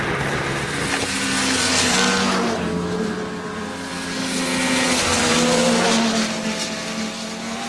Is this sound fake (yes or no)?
no